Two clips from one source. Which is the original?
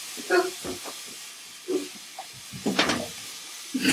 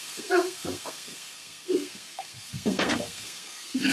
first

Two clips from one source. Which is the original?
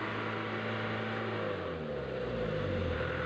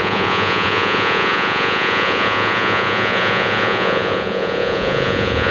first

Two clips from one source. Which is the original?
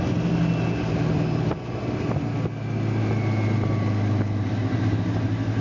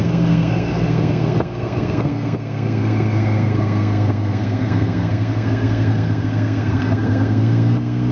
first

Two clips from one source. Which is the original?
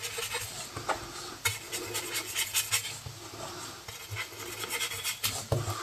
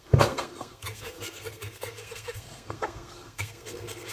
first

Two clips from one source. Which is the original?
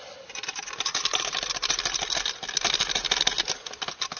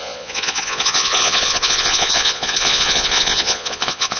first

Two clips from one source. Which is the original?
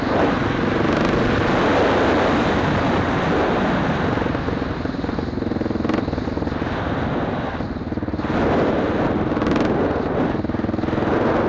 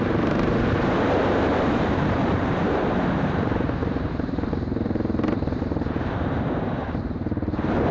first